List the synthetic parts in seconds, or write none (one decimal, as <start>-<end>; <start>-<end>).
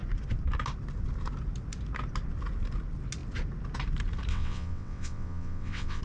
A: 4.3-6.0